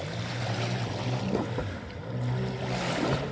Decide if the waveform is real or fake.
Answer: real